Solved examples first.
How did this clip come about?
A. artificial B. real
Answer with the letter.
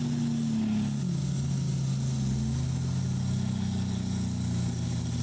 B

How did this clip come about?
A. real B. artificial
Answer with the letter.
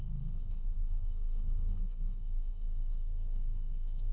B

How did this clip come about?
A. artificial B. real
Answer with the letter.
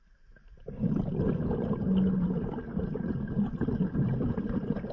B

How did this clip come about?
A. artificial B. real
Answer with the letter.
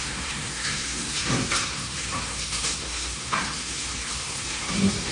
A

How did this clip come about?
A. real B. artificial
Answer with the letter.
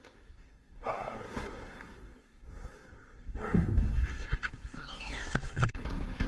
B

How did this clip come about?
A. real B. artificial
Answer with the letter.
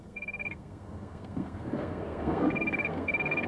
B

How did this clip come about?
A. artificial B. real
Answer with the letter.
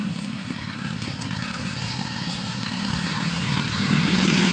A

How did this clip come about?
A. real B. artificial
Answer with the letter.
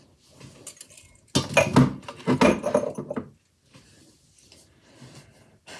A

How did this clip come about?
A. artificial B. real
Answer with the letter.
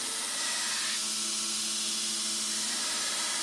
B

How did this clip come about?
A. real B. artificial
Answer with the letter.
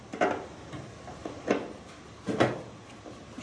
A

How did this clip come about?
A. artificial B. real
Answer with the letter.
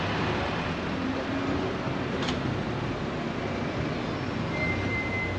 B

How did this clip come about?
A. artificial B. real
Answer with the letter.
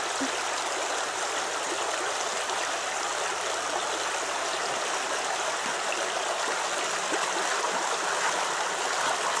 B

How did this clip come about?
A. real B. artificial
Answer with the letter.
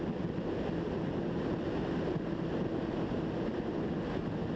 A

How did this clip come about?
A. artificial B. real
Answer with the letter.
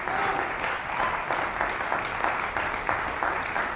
B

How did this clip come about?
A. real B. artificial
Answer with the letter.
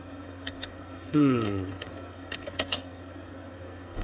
B